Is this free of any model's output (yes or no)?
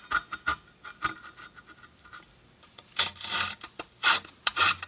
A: yes